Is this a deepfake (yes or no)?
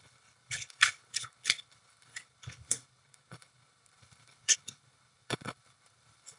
yes